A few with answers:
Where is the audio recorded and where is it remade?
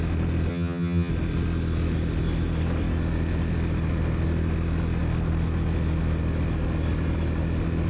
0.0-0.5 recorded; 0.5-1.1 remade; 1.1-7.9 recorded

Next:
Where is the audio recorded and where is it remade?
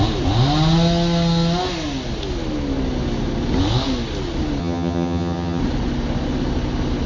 0.0-4.6 recorded; 4.6-5.6 remade; 5.6-7.1 recorded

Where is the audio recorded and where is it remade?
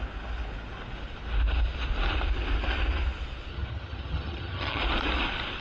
0.0-3.5 recorded; 3.5-4.8 remade; 4.8-5.6 recorded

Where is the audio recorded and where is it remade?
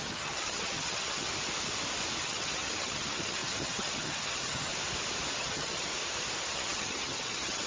0.0-1.3 remade; 1.3-2.2 recorded; 2.2-4.7 remade; 4.7-5.4 recorded; 5.4-5.9 remade; 5.9-6.5 recorded; 6.5-7.7 remade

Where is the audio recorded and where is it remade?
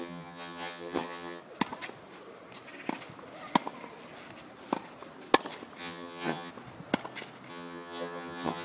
0.0-1.4 remade; 1.4-5.8 recorded; 5.8-6.5 remade; 6.5-7.5 recorded; 7.5-8.6 remade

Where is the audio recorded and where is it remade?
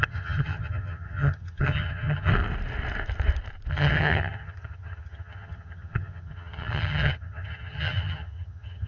0.0-2.3 remade; 2.3-3.7 recorded; 3.7-8.9 remade